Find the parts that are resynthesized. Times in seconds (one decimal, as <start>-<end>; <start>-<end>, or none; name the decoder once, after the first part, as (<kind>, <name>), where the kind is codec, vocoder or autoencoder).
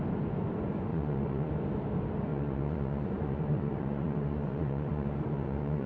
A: 0.9-1.5 (vocoder, Vocos); 2.3-5.9